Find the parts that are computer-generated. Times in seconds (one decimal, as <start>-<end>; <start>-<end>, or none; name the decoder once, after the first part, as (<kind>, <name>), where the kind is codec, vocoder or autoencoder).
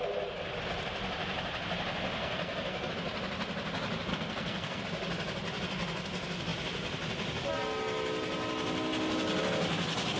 2.2-2.9 (codec, SNAC); 4.1-4.8